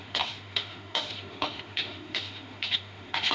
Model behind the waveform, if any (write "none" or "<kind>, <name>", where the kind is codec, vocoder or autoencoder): autoencoder, DAC-VAE